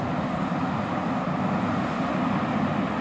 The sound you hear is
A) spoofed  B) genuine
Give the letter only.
B